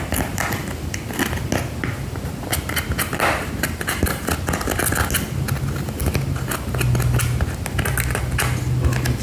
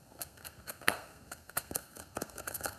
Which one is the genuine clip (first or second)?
first